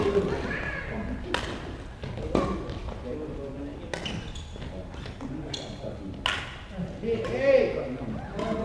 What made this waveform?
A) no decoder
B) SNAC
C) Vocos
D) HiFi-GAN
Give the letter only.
A